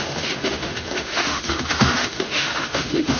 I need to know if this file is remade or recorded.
remade